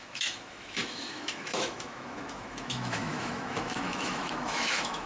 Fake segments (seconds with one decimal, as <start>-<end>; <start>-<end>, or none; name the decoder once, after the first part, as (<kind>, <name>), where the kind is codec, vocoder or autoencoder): 0.0-5.1 (autoencoder, DAC-VAE)